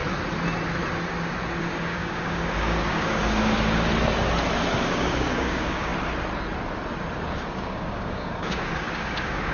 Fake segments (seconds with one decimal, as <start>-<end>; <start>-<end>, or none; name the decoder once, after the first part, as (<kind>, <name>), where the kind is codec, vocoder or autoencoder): 1.6-3.9 (codec, DAC); 4.8-5.9; 7.5-9.5